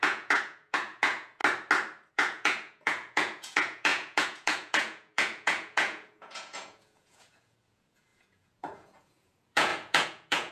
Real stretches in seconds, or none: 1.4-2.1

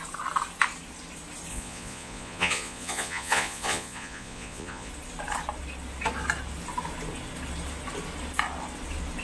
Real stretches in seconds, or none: 0.0-1.5; 4.9-9.2